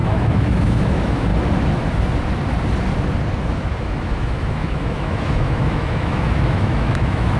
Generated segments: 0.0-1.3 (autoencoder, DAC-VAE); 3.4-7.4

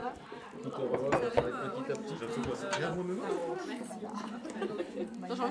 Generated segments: 0.0-1.0 (vocoder, BigVGAN v2); 3.4-4.8

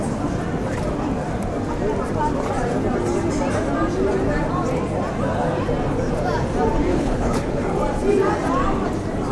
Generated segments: 6.9-7.6 (codec, HILCodec)

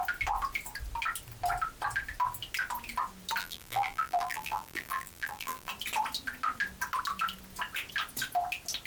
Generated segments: 3.4-5.7 (vocoder, BigVGAN v2)

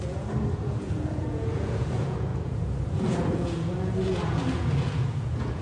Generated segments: 0.0-5.6 (vocoder, Vocos)

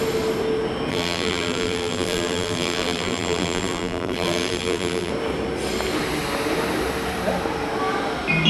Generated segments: 0.9-5.1 (vocoder, BigVGAN v2)

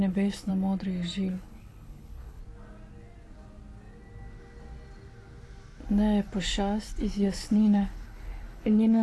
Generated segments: 0.0-0.5 (codec, HILCodec); 1.3-2.4; 7.0-9.0